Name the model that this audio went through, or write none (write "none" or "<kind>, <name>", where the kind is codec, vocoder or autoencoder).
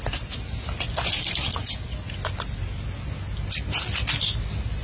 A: none